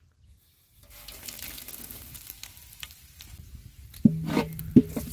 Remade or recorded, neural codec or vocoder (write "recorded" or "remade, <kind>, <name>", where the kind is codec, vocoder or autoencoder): recorded